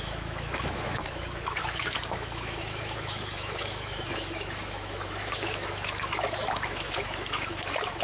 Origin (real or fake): fake